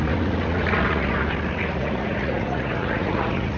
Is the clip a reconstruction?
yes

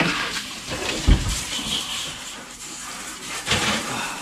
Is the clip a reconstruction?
yes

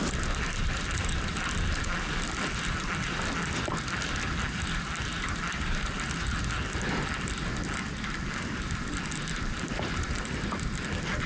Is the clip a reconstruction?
no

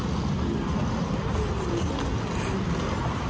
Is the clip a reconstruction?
no